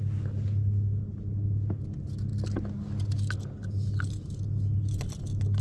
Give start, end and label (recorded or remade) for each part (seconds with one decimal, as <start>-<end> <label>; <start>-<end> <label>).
0.0-5.6 recorded